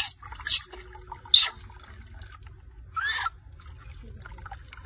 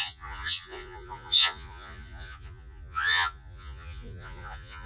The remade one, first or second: second